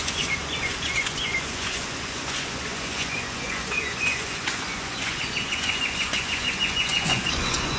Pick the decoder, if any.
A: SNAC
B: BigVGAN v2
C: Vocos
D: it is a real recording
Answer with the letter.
C